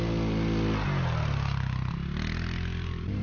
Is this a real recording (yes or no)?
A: yes